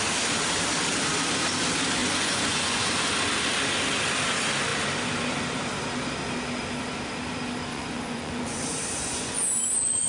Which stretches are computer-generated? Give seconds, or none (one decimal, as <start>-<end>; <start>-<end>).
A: 2.0-3.1; 7.7-10.1

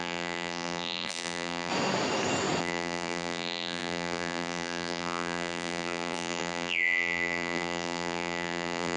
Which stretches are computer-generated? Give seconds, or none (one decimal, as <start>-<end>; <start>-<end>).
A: 0.0-1.7; 2.6-9.0

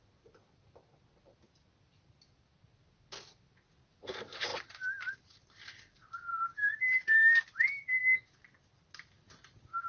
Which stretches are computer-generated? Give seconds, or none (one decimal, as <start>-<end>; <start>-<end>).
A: none

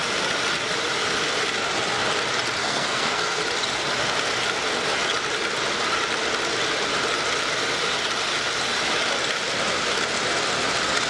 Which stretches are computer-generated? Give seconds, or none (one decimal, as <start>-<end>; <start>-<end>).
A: 2.6-3.4

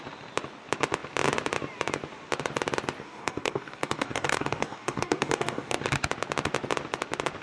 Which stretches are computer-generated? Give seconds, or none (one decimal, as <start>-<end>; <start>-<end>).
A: 3.0-5.8

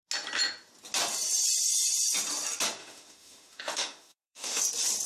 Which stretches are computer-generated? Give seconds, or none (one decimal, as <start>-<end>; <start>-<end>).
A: 2.8-4.6

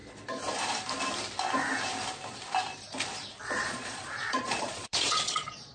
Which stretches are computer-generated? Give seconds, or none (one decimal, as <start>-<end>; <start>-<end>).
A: 3.4-5.7

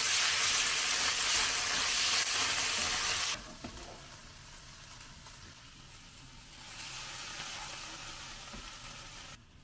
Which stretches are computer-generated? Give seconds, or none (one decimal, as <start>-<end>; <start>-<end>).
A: none